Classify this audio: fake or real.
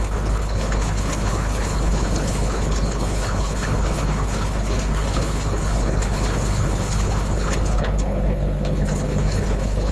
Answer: fake